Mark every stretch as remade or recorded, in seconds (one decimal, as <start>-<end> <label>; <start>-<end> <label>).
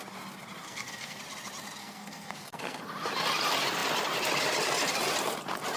0.0-0.6 recorded; 0.6-1.2 remade; 1.2-1.8 recorded; 1.8-2.8 remade; 2.8-5.8 recorded